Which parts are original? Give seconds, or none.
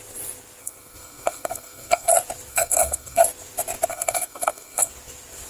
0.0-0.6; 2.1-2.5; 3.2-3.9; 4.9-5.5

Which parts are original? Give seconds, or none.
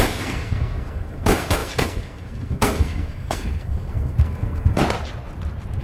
4.8-5.8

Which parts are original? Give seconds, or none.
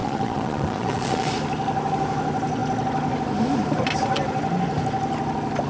1.3-5.7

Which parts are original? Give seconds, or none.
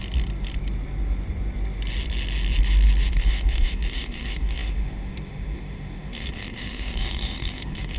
0.0-3.1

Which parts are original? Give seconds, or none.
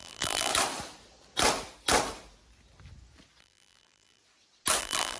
0.5-3.4; 4.2-4.8